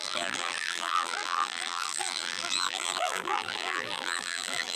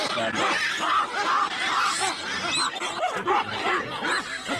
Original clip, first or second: second